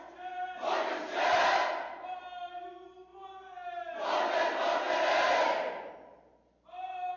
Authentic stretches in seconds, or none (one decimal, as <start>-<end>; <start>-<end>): 0.0-7.2